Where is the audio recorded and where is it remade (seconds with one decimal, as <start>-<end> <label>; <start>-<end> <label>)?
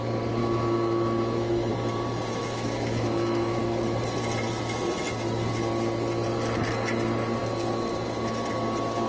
0.0-0.4 recorded; 0.4-1.7 remade; 1.7-2.4 recorded; 2.4-3.6 remade; 3.6-9.1 recorded